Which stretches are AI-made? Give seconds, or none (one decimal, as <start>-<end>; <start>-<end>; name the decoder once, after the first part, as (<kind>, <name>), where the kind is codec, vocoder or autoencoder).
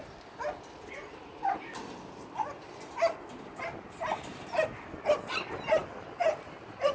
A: 5.8-6.5 (vocoder, BigVGAN v2)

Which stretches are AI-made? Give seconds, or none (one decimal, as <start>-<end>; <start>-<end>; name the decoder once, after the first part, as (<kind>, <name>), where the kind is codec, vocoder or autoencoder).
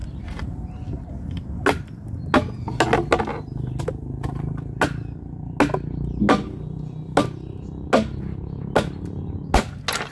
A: none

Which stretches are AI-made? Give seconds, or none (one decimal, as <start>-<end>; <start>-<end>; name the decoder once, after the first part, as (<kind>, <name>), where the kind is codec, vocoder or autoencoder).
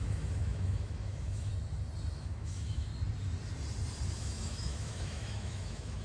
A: 0.0-1.5 (autoencoder, DAC-VAE); 2.1-2.9; 4.1-6.0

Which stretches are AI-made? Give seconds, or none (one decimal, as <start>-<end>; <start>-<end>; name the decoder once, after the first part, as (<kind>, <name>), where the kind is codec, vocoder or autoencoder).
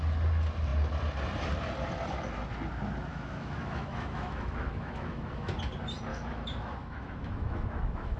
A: 3.1-5.5 (autoencoder, DAC-VAE); 6.1-8.2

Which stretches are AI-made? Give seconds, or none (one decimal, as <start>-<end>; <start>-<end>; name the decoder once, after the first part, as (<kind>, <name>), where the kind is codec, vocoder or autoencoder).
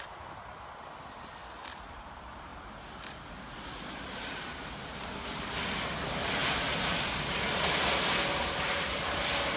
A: none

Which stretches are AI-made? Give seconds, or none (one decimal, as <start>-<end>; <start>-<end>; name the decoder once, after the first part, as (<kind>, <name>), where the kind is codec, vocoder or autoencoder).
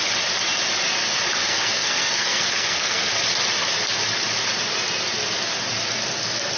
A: 1.4-3.1 (codec, SNAC)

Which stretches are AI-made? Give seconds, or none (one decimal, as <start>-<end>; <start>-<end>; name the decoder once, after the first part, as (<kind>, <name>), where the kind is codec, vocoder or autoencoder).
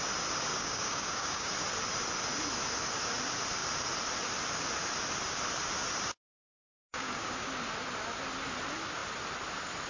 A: 0.5-1.5 (codec, DAC); 6.3-7.5